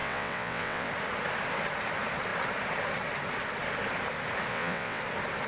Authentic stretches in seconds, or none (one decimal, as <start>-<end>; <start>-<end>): 0.9-4.5; 5.0-5.5